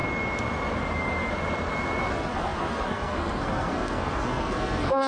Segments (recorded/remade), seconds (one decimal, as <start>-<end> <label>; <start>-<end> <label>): 0.0-2.1 recorded; 2.1-5.1 remade